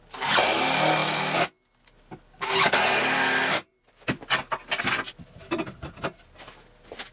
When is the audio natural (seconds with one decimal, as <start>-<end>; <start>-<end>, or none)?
0.0-7.1